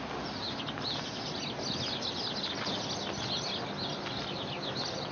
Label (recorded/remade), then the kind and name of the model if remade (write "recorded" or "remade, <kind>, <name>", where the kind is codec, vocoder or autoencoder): recorded